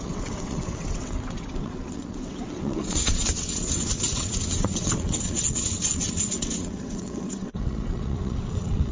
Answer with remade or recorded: remade